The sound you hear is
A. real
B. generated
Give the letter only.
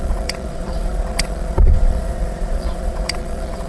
B